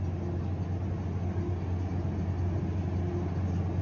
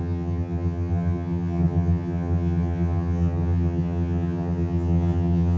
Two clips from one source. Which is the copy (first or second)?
second